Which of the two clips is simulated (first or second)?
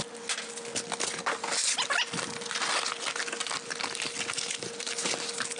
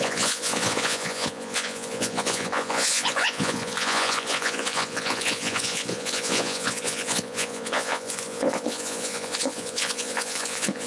second